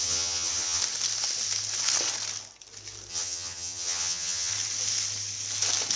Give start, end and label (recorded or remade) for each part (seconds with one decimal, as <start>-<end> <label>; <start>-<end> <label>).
0.0-0.8 remade; 0.8-3.1 recorded; 3.1-4.5 remade; 4.5-6.0 recorded